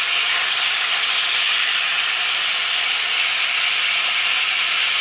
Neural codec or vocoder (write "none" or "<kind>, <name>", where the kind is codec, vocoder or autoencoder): none